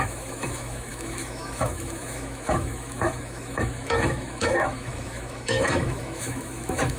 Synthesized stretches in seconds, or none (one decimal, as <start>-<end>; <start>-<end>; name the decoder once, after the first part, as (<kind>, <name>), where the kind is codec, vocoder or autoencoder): 0.0-7.0 (autoencoder, DAC-VAE)